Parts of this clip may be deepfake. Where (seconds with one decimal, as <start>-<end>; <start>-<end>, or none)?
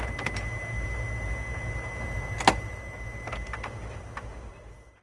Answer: none